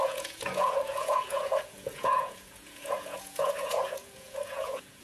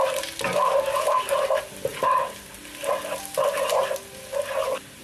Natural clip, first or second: second